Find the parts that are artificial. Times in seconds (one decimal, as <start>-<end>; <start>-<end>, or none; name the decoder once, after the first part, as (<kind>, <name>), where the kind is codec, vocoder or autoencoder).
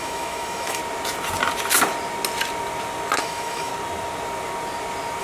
0.0-0.8 (autoencoder, DAC-VAE); 3.2-3.7